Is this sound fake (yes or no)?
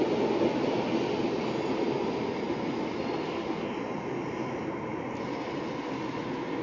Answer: no